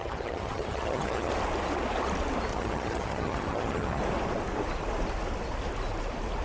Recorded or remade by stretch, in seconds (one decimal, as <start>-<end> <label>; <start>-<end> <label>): 0.0-1.3 remade; 1.3-2.5 recorded; 2.5-4.0 remade; 4.0-6.4 recorded